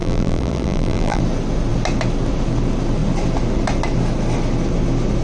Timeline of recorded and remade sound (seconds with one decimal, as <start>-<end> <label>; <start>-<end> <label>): 0.0-1.2 remade; 1.2-5.2 recorded